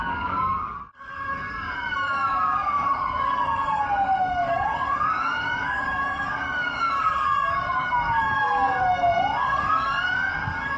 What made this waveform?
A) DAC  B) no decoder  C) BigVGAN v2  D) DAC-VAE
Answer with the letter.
A